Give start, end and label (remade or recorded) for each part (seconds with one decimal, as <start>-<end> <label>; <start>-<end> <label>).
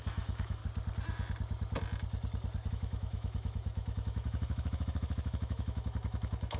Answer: 0.0-0.6 remade; 0.6-2.7 recorded; 2.7-6.6 remade